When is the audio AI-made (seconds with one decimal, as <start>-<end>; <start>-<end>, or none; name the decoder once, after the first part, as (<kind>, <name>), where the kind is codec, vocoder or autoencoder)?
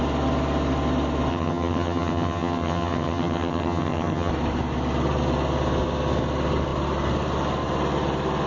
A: 1.3-4.3 (vocoder, HiFi-GAN)